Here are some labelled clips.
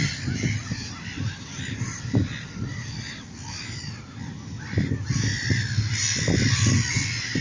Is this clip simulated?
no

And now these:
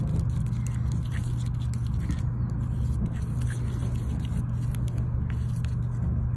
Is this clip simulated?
no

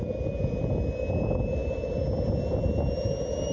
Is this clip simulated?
no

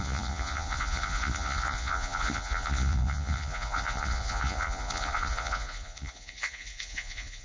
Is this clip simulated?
yes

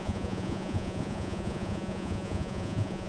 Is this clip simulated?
yes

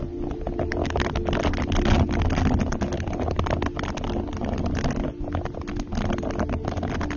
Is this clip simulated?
no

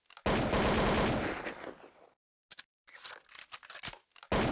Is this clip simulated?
no